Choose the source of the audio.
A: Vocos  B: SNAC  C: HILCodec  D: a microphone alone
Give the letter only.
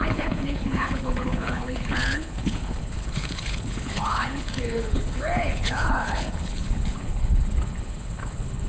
C